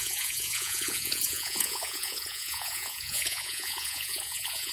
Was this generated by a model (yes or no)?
yes